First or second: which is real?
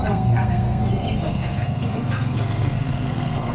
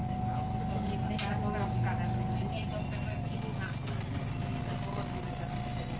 second